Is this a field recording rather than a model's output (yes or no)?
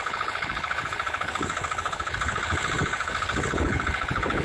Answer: no